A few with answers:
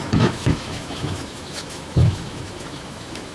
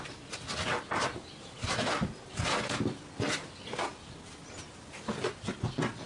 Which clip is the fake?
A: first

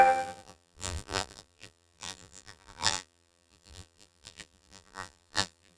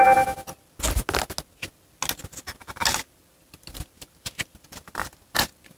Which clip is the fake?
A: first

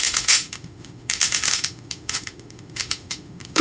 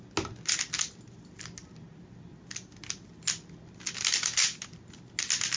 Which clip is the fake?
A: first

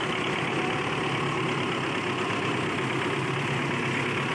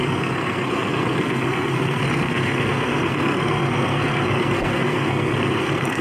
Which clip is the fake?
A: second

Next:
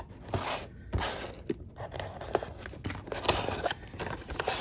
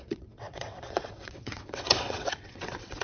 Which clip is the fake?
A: second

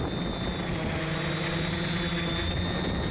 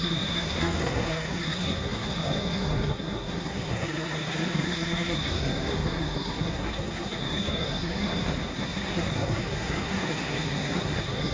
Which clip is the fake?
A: second